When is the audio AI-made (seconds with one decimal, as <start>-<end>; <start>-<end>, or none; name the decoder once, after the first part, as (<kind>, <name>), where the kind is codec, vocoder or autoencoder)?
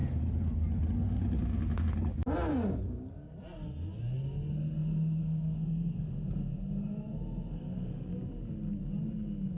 4.5-8.1 (codec, SNAC)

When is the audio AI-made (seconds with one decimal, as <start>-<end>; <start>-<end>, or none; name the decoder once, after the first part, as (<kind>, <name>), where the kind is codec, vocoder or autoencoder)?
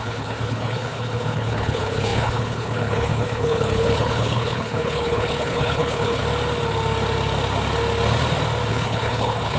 0.0-6.2 (codec, HILCodec); 8.7-9.6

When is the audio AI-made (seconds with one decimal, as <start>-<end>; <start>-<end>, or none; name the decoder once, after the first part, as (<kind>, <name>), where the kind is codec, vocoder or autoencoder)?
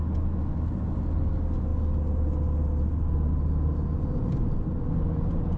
none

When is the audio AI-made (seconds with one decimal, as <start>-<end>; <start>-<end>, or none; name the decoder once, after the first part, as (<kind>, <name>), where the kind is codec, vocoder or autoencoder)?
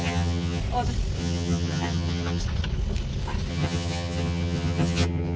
0.0-0.6 (vocoder, HiFi-GAN); 1.2-2.4; 3.5-5.4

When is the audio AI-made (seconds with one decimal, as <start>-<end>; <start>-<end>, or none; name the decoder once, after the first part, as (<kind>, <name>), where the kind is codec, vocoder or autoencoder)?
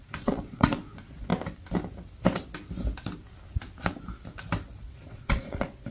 0.0-1.3 (vocoder, Vocos); 4.8-5.9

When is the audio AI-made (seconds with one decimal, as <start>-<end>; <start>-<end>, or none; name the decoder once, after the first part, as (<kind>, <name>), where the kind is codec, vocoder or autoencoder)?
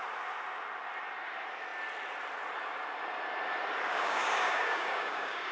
3.9-5.5 (codec, DAC)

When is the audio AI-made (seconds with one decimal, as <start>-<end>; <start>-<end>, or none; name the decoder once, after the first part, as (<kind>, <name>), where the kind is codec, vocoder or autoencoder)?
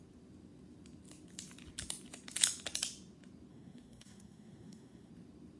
3.5-5.1 (codec, SNAC)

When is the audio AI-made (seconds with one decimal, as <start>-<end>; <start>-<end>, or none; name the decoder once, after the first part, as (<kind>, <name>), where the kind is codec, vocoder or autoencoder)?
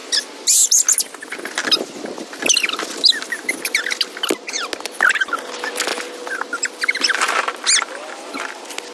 none